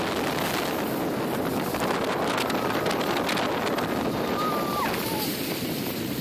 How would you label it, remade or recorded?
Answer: recorded